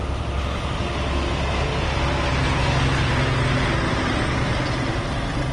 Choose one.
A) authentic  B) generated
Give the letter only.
A